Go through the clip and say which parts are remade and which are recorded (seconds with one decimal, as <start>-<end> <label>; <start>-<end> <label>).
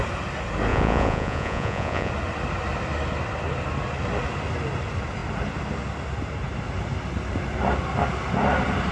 0.0-0.7 recorded; 0.7-2.1 remade; 2.1-8.9 recorded